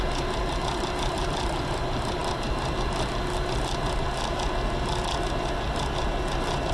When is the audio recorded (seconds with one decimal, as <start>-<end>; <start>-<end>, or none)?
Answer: 0.0-6.7